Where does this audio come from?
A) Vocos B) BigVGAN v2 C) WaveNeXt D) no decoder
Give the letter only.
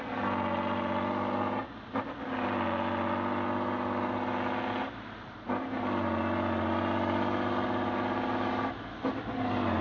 D